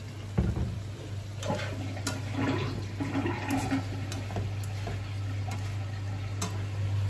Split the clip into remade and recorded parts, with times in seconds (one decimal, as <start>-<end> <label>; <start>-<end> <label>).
0.0-7.1 recorded